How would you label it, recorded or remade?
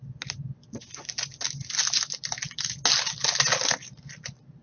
recorded